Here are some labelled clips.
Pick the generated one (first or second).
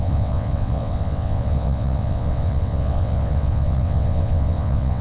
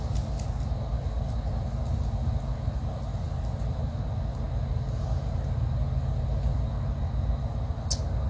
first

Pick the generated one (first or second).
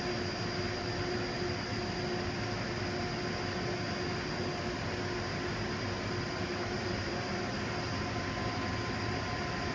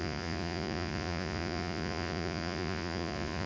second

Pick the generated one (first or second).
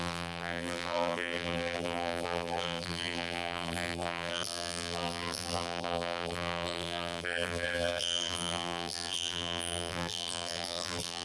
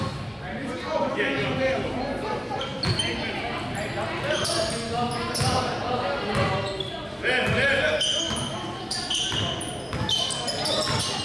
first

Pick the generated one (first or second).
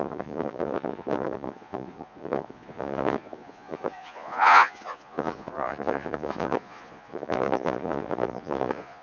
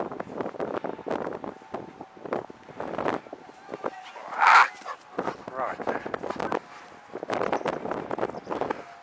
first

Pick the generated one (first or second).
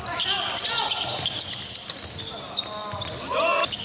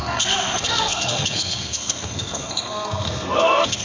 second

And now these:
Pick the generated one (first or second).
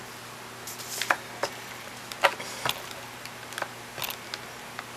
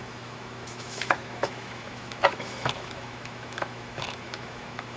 second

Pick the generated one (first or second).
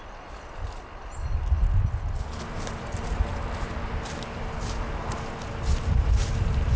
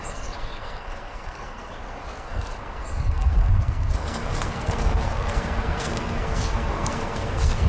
second